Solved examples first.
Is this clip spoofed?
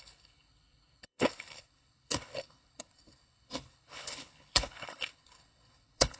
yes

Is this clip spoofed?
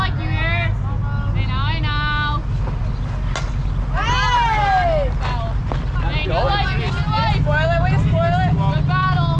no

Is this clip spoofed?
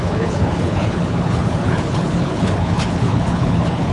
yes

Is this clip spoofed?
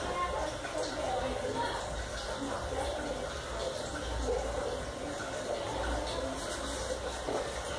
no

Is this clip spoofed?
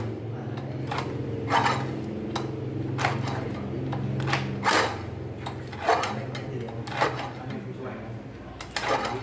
no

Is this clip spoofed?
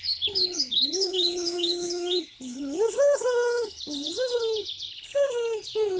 yes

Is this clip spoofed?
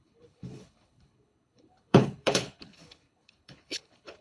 yes